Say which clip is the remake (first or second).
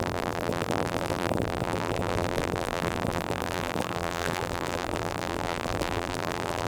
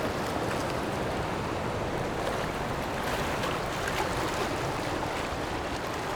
first